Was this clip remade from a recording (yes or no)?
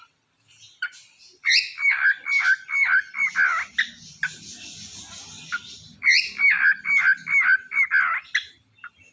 no